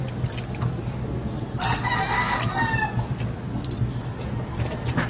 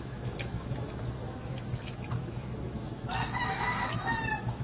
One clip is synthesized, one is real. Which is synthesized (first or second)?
second